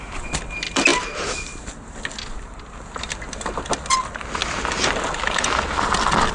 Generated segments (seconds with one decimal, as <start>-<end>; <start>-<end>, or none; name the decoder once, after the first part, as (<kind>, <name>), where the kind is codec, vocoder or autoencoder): none